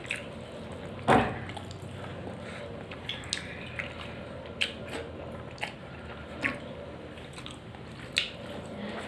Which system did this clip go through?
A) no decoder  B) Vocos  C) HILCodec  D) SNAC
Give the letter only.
A